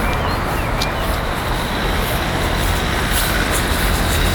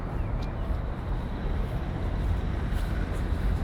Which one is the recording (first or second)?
first